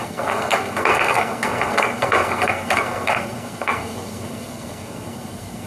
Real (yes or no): no